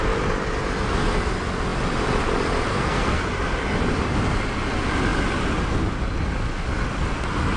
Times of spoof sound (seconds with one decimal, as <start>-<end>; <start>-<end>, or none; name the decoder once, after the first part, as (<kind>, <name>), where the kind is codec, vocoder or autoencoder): 2.7-3.2 (codec, SNAC)